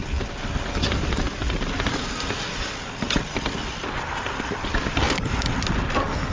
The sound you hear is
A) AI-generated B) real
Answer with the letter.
B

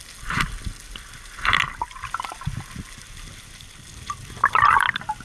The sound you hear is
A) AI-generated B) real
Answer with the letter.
B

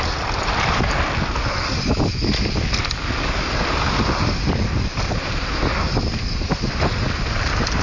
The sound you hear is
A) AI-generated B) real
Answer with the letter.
B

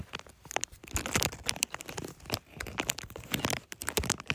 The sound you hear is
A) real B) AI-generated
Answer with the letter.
B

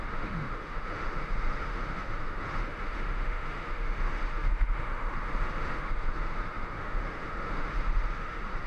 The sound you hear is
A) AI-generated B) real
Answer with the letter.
A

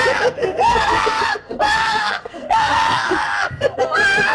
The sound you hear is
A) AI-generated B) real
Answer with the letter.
A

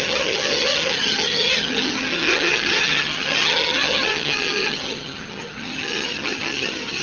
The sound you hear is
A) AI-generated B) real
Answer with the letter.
A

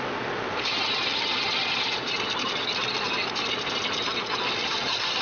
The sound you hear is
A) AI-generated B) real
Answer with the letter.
B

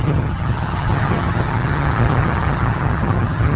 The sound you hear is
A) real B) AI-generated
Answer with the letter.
B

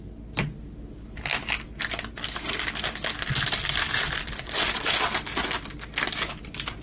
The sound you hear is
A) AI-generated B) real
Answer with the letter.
B